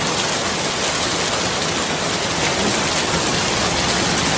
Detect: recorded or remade recorded